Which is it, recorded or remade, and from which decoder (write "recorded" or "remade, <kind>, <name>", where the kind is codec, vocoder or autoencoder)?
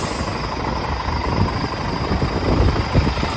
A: recorded